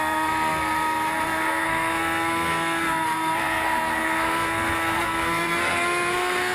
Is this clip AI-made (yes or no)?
yes